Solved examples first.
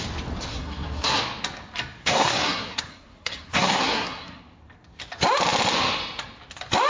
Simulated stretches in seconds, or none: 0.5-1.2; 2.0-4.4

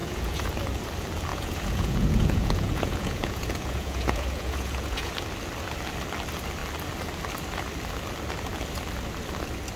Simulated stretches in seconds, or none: 0.0-0.5; 1.3-5.1

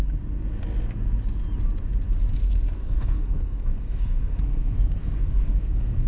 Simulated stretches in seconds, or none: 2.4-6.1